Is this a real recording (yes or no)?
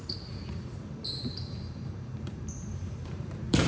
no